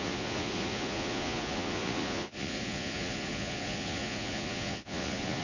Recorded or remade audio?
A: remade